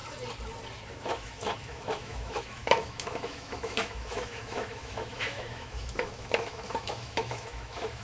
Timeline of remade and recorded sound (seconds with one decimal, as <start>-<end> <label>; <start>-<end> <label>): 0.0-0.9 recorded; 0.9-8.0 remade